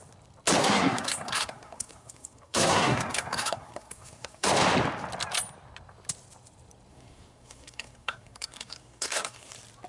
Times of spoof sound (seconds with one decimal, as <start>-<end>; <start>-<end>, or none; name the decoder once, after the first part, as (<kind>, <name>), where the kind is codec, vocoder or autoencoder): 0.6-4.5 (codec, SNAC); 6.9-9.5